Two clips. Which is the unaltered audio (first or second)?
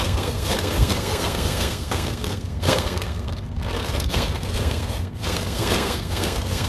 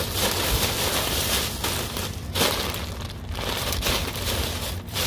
second